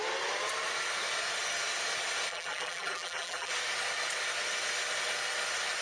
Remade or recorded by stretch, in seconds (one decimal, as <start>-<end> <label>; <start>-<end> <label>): 0.0-2.3 recorded; 2.3-3.5 remade; 3.5-5.8 recorded